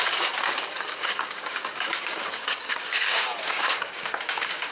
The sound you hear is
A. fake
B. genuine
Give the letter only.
A